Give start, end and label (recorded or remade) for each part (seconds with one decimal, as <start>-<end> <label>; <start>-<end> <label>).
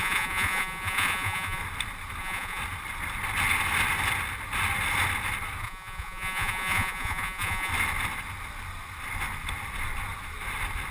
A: 0.0-1.6 remade; 1.6-2.2 recorded; 2.2-2.6 remade; 2.6-5.6 recorded; 5.6-7.7 remade; 7.7-10.9 recorded